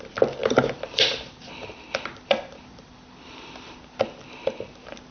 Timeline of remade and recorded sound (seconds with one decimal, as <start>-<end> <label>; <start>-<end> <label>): 0.0-0.4 recorded; 0.4-3.5 remade; 3.5-5.1 recorded